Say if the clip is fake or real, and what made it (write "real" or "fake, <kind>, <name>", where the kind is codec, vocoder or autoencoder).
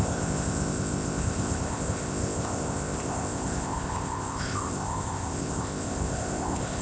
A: fake, codec, ZipCodec